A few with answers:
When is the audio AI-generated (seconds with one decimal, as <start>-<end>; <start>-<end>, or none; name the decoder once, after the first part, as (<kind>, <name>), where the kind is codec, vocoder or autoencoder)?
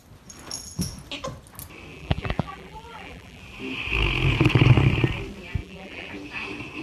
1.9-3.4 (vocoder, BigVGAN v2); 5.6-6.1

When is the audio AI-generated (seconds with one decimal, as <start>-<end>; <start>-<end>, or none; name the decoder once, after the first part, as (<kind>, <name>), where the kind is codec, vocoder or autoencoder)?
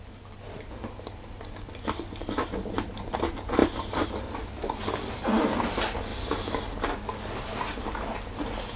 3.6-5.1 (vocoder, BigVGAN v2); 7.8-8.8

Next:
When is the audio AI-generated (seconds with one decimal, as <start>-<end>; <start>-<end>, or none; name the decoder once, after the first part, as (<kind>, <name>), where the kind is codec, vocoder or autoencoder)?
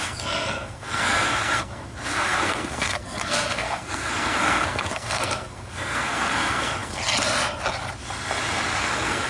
0.0-7.0 (codec, SNAC); 8.8-9.3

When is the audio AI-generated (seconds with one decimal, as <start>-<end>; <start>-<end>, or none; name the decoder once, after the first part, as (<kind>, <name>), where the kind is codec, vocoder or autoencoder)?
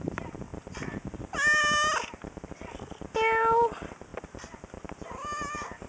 none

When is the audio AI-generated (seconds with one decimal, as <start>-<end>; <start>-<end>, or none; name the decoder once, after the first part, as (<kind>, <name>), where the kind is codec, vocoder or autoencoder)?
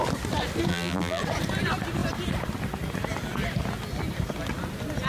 0.7-1.2 (vocoder, BigVGAN v2)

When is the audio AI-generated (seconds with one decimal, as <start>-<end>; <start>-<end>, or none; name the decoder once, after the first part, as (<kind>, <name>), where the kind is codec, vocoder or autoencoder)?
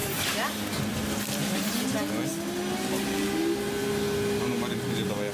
none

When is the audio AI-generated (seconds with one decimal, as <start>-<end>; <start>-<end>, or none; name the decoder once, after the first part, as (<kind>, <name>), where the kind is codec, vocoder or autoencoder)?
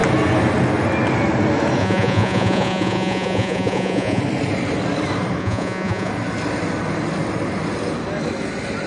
1.8-4.2 (vocoder, Vocos); 5.4-6.1